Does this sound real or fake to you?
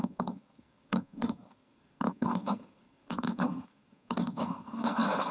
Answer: fake